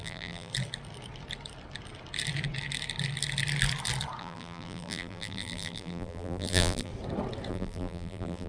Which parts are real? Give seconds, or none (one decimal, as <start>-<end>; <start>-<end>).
0.5-4.2; 6.9-7.5